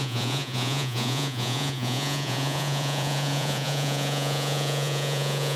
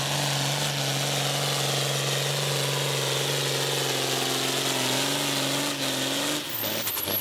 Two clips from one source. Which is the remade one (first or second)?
first